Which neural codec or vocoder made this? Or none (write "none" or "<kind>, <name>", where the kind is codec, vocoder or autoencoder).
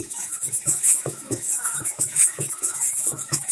autoencoder, DAC-VAE